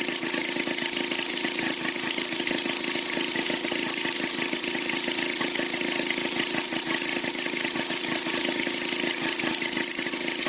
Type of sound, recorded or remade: recorded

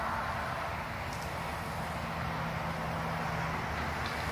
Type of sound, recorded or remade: recorded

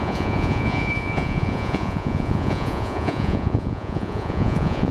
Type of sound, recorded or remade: remade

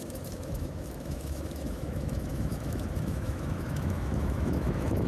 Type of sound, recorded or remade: remade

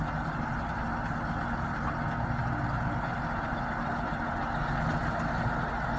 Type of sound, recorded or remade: recorded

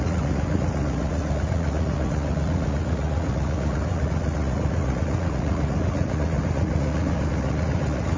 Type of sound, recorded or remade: remade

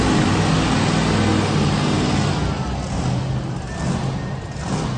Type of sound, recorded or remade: recorded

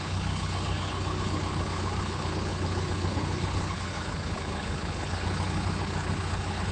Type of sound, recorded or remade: remade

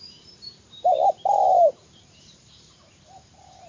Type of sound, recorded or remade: remade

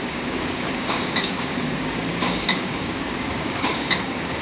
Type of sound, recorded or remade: remade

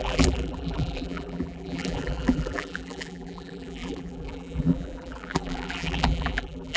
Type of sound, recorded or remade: remade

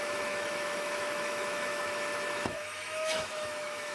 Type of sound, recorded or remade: remade